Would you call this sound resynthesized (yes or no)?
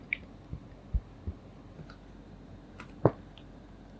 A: no